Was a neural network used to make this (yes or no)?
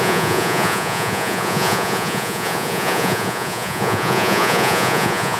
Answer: yes